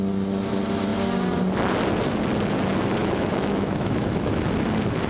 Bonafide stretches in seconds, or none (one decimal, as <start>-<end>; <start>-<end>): 0.0-3.0; 4.4-5.1